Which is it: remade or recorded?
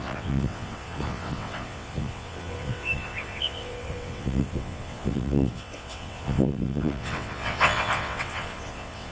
remade